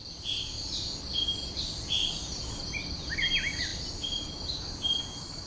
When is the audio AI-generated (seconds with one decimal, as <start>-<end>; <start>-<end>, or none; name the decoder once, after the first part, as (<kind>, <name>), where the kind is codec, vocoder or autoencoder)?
none